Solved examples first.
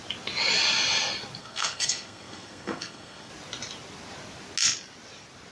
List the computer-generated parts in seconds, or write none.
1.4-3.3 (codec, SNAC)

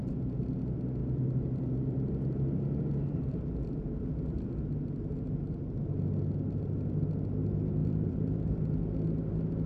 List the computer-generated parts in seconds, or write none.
1.0-4.3 (vocoder, BigVGAN v2); 7.8-8.8

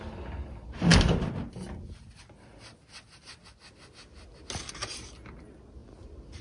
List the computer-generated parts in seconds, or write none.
5.8-6.4 (vocoder, BigVGAN v2)

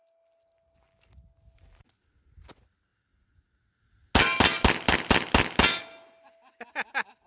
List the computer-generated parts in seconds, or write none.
none

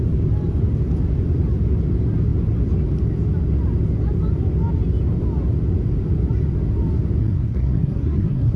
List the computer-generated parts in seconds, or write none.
7.2-8.6 (codec, SNAC)

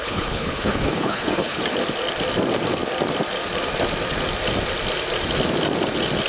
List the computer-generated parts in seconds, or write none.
0.0-1.6 (codec, HILCodec)

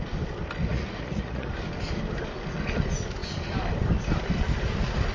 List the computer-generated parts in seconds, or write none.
0.7-1.5 (vocoder, Vocos)